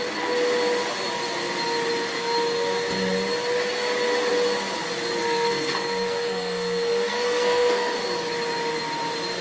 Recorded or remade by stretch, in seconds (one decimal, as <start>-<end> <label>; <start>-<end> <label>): 0.0-5.2 recorded; 5.2-8.0 remade; 8.0-9.4 recorded